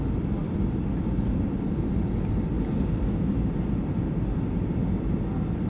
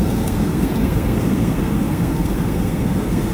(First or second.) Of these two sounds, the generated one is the second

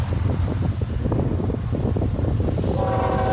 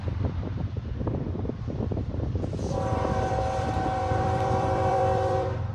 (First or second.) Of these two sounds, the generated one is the second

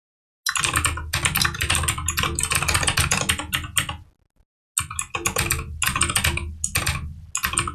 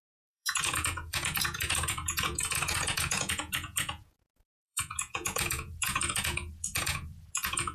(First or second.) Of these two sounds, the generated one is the second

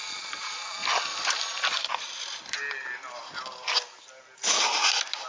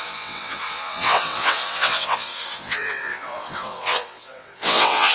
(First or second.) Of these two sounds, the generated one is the second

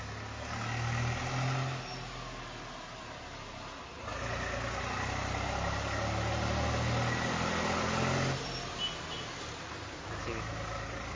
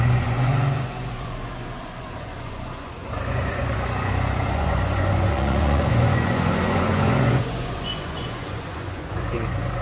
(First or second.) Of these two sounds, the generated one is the second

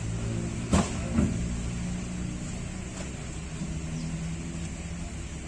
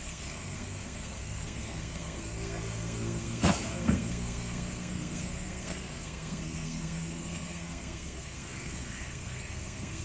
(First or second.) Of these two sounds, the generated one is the second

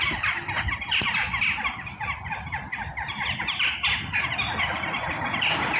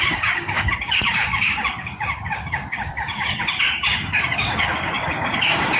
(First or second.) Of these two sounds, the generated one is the second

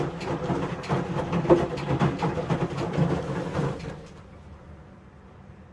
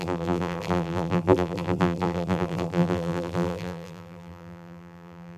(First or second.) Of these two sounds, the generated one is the second